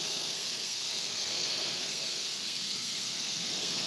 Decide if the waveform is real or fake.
fake